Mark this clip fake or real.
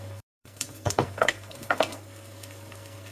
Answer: fake